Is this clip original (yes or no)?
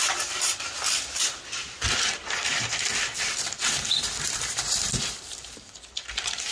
no